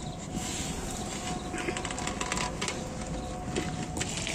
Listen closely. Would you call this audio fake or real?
real